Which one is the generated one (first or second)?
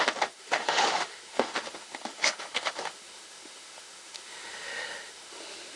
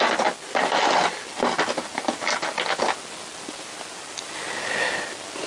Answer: first